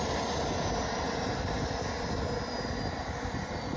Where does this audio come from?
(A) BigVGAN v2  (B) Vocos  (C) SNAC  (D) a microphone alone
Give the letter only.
D